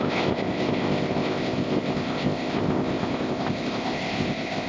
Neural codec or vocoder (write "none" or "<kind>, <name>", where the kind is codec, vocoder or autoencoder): codec, ZipCodec